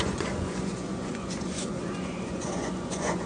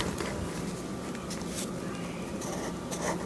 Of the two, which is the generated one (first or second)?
first